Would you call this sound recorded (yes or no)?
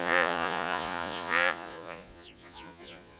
no